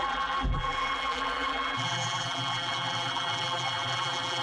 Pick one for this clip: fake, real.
fake